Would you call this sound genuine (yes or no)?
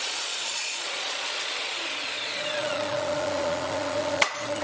no